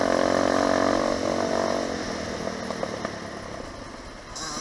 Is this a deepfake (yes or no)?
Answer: no